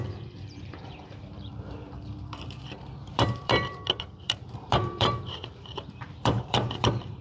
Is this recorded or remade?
remade